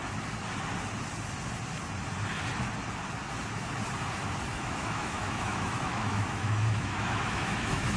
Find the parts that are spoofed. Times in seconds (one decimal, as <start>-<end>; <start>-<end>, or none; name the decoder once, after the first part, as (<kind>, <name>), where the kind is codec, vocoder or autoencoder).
4.5-8.0 (autoencoder, DAC-VAE)